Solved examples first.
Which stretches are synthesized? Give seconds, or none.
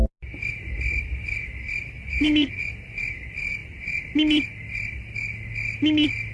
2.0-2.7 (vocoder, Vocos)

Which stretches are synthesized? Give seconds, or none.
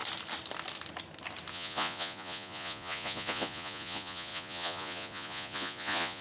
1.5-6.2 (vocoder, Vocos)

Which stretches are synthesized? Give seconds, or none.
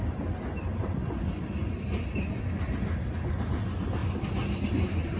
none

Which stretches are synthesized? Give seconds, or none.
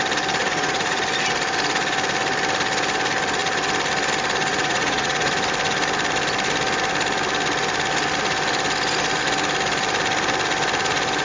0.4-1.0 (vocoder, Vocos); 4.5-5.3